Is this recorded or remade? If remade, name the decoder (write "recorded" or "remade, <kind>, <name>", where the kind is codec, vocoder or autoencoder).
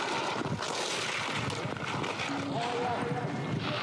recorded